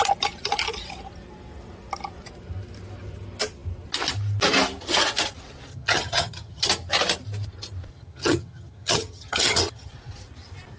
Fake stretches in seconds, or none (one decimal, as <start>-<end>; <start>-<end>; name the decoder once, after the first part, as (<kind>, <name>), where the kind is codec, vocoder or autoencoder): 5.7-6.7 (vocoder, HiFi-GAN); 7.9-9.9